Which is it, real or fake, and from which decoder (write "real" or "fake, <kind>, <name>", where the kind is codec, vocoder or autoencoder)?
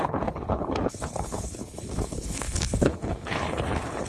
fake, codec, HILCodec